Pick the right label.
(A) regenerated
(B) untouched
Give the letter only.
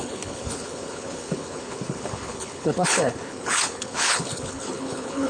A